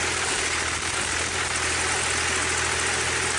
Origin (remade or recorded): recorded